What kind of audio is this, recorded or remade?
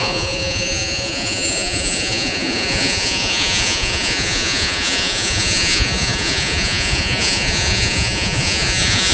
remade